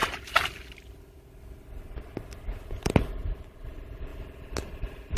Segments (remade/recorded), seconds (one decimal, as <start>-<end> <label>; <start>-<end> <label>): 0.0-3.1 remade; 3.1-5.2 recorded